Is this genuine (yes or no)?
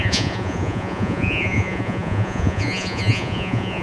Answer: no